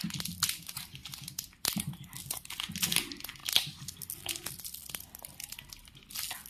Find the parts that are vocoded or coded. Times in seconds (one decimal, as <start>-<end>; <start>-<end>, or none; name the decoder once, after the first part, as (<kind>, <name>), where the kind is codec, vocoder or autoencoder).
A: none